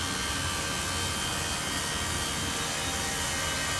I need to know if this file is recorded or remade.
recorded